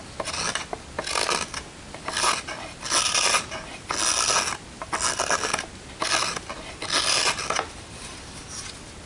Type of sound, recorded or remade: recorded